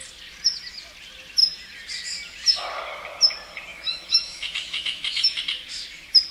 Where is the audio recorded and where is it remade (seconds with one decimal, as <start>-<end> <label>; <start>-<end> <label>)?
0.0-3.7 recorded; 3.7-5.4 remade; 5.4-6.3 recorded